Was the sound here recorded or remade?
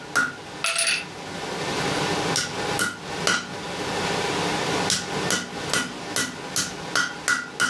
recorded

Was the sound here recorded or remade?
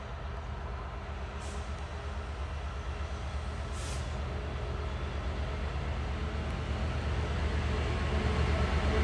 recorded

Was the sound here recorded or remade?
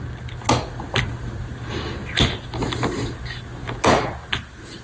recorded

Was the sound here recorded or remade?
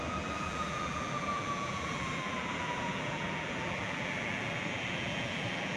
remade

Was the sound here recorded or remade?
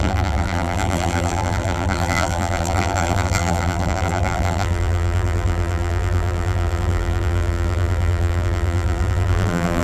remade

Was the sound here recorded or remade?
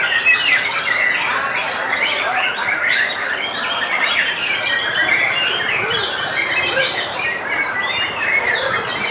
remade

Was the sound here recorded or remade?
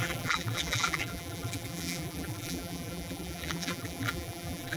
remade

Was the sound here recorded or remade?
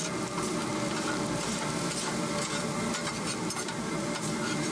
remade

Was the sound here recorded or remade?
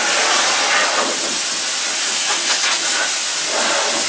recorded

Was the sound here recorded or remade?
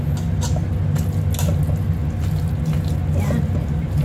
recorded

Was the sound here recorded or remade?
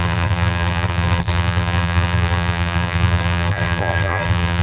remade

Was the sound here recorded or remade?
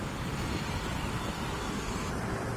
remade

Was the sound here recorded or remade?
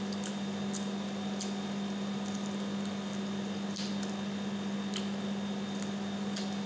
recorded